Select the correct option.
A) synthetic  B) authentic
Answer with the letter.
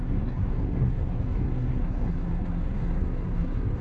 A